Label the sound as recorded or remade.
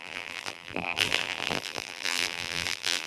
remade